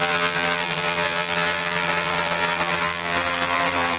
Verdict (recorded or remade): remade